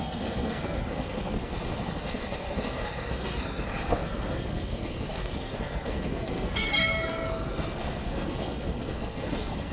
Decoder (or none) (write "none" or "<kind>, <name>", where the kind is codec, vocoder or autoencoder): codec, SNAC